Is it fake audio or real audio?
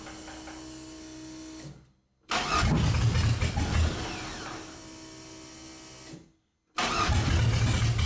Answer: real